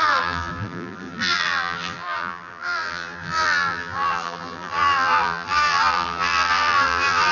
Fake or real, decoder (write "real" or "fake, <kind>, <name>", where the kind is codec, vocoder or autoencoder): fake, vocoder, BigVGAN v2